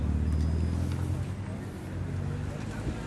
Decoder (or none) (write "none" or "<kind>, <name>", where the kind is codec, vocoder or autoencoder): none